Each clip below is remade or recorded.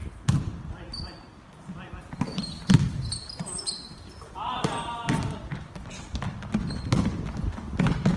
recorded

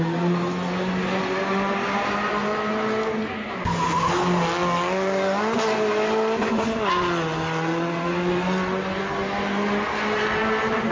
recorded